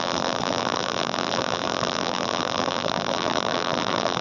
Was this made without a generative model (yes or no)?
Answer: no